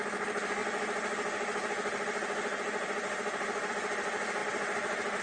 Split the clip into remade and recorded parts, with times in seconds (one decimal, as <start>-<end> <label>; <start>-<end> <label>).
0.0-5.2 recorded